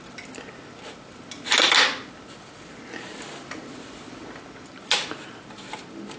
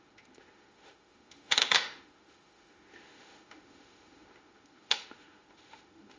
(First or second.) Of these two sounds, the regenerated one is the second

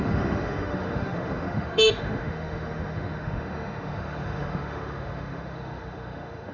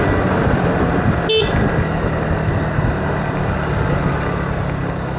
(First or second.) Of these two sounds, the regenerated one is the first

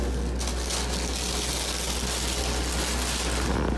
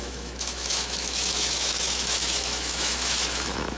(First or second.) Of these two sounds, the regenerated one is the second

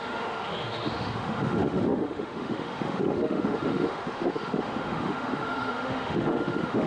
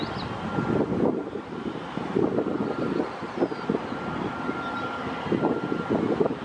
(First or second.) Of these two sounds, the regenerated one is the first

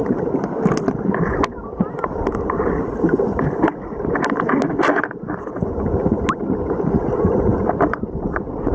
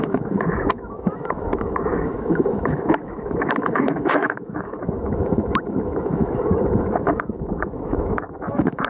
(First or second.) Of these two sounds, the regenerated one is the second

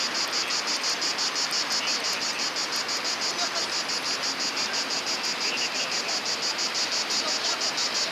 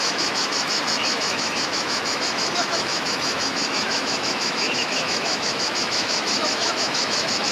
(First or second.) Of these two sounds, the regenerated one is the second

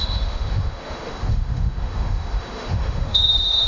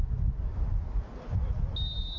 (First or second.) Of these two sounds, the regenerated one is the first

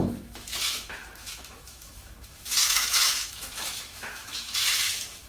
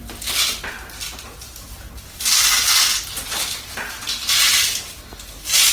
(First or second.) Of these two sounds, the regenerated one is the first